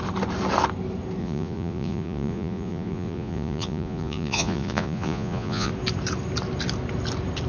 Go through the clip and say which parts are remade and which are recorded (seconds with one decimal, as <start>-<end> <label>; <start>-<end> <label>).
0.0-1.2 recorded; 1.2-5.7 remade; 5.7-7.5 recorded